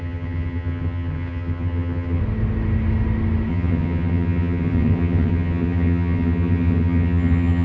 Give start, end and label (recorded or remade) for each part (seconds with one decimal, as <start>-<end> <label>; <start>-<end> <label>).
0.0-2.2 remade; 2.2-3.5 recorded; 3.5-7.6 remade